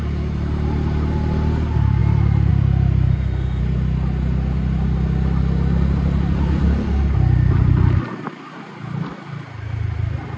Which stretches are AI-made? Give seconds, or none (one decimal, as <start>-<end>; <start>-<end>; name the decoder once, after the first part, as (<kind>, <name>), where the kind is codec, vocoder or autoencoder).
3.1-3.6 (autoencoder, DAC-VAE)